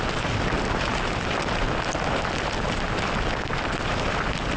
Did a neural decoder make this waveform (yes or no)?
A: no